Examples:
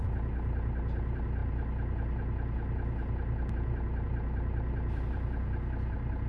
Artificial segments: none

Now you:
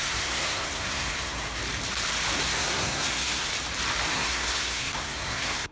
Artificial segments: 0.0-1.6; 2.4-3.5; 4.1-5.7

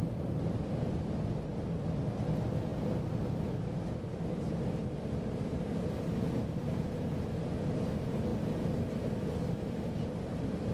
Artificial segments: 4.1-7.5

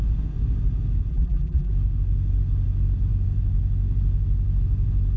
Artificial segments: 1.1-1.7

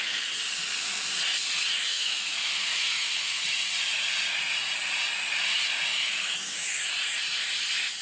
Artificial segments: 1.9-3.4; 5.9-6.9

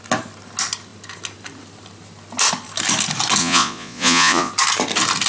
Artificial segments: 3.4-4.5

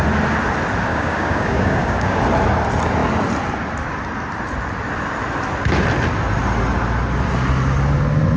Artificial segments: 0.9-2.2

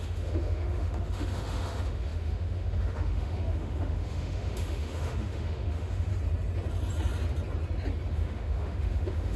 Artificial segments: 0.0-6.1; 8.1-9.4